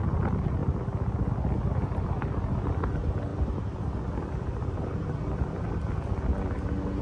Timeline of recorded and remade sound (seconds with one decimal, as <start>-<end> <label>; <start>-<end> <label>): 0.0-3.3 recorded; 3.3-5.7 remade; 5.7-7.0 recorded